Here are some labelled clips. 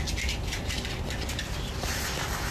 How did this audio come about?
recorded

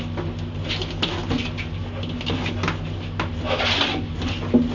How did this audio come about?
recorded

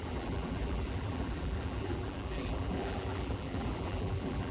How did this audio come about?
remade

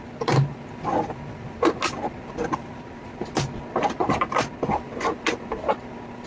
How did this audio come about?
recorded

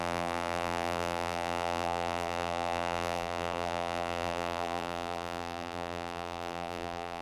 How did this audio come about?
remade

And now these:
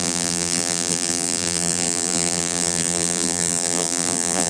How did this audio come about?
remade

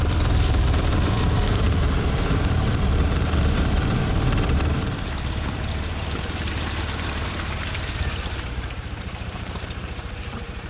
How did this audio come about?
remade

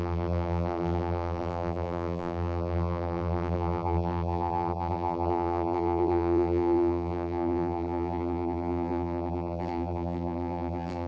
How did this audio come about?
remade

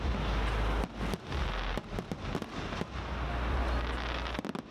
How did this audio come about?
recorded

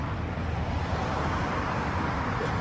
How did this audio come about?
remade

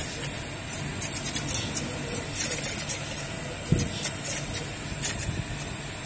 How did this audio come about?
recorded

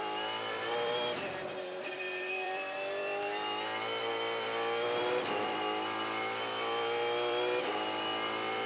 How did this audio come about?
remade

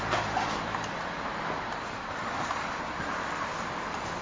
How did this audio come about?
remade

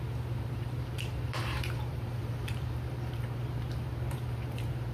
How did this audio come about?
remade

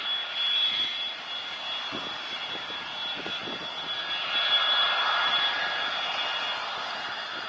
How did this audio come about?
recorded